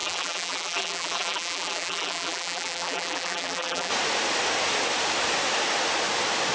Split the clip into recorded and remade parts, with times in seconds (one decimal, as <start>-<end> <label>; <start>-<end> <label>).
0.0-3.9 remade; 3.9-6.5 recorded